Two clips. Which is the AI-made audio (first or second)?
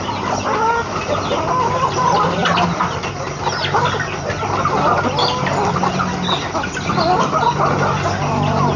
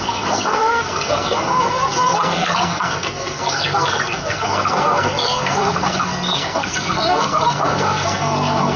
second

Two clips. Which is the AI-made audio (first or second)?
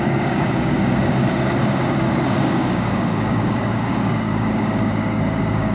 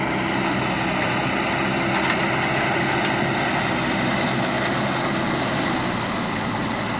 first